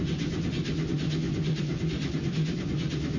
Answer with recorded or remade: recorded